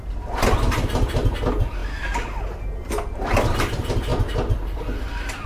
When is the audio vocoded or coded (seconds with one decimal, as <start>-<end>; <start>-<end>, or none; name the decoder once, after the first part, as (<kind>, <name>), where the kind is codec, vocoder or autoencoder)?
none